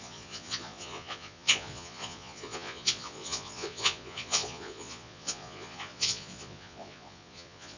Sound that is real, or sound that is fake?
fake